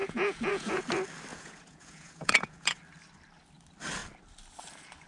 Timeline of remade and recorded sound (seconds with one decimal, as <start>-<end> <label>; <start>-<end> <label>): 0.0-0.8 remade; 0.8-1.3 recorded; 1.3-2.8 remade; 2.8-5.1 recorded